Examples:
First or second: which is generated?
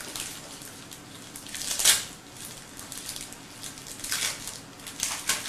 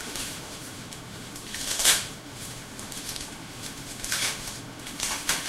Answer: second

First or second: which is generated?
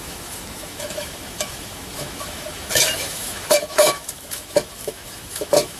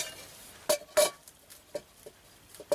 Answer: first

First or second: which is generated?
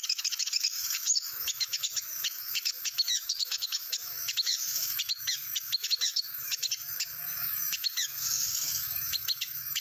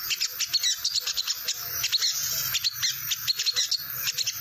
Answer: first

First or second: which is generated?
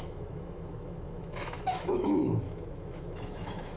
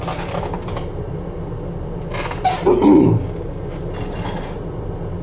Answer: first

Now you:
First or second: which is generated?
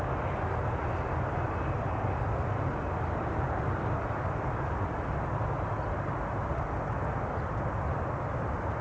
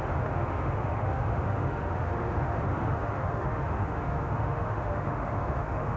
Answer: second